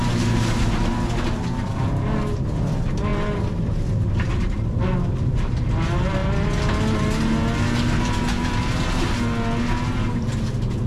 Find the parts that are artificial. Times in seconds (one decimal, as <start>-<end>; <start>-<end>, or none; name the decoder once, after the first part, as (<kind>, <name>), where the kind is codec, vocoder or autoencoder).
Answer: none